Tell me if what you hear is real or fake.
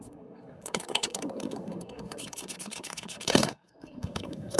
fake